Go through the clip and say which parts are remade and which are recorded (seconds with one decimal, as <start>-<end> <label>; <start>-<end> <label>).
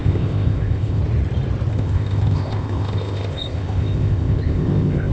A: 0.0-1.0 remade; 1.0-1.7 recorded; 1.7-5.1 remade